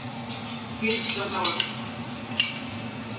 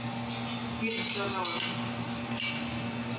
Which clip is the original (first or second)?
second